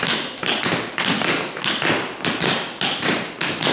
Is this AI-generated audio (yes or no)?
no